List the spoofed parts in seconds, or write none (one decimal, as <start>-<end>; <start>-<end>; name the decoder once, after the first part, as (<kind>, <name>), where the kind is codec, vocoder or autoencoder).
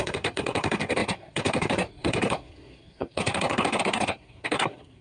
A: 0.0-5.0 (codec, SNAC)